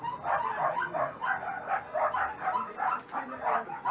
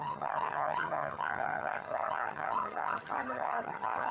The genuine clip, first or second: first